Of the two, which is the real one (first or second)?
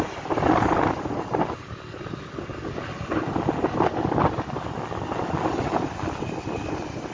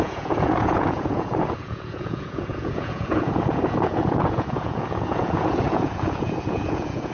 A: first